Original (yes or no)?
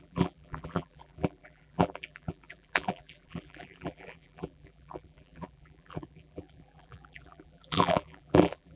no